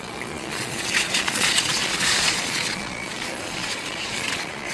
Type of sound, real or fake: fake